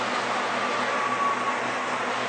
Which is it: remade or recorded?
recorded